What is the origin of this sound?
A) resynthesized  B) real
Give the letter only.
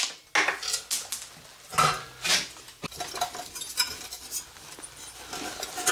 B